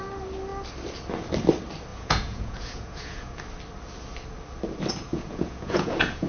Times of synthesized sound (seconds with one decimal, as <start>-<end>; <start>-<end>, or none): 1.9-3.4; 5.1-6.3